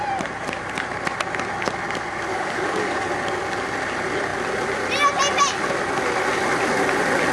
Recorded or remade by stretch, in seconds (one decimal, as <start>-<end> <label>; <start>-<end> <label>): 0.0-2.3 recorded; 2.3-3.1 remade; 3.1-7.3 recorded